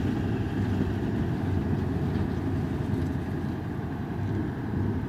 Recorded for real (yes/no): yes